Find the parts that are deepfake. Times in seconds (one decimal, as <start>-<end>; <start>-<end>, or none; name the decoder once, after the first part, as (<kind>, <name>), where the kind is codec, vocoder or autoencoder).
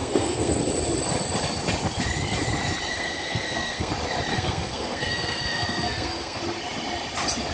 0.0-0.6 (codec, SNAC); 2.9-3.9; 4.3-6.4